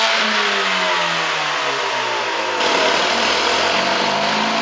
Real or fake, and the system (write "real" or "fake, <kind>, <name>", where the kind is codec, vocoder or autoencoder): real